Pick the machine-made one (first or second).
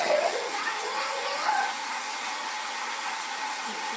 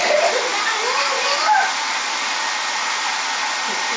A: first